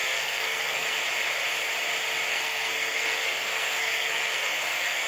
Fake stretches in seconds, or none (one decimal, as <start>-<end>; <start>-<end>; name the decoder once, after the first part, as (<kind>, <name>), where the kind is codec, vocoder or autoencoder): 0.0-1.0 (codec, SNAC); 2.3-5.1